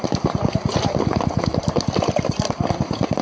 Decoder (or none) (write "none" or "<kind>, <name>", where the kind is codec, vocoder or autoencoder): none